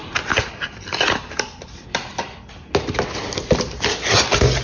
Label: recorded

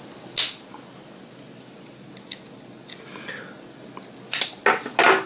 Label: recorded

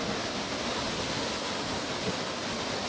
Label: recorded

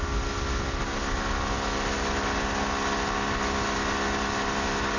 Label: recorded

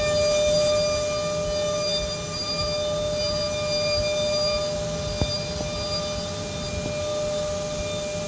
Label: recorded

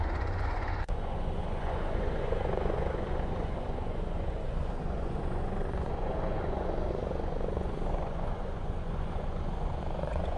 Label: remade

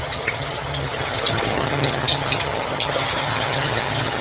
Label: remade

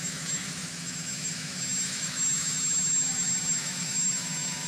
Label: remade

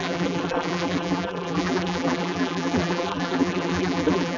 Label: remade